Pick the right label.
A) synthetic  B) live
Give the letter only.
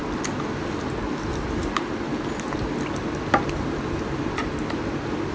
B